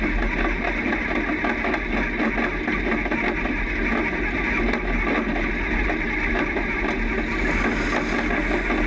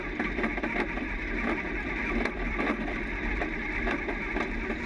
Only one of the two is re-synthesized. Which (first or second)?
second